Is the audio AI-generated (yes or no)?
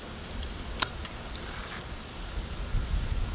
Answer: no